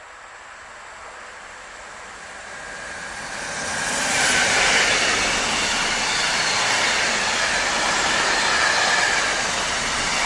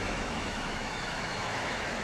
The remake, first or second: second